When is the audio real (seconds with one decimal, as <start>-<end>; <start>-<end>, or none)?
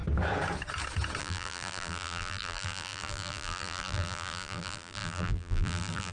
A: 0.0-1.2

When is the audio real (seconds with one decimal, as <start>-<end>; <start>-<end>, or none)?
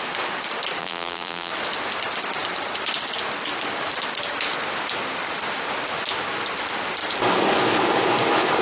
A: 0.0-0.8; 1.5-8.6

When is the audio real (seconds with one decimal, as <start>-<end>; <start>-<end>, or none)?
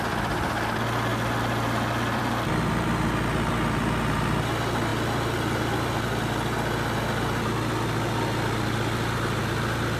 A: 0.0-1.1; 2.5-10.0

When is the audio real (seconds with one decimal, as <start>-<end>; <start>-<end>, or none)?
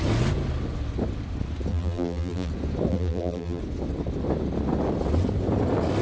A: 0.0-1.7; 2.5-2.9; 3.6-6.0